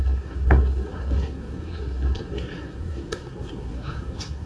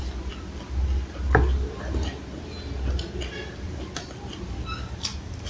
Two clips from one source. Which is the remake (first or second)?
first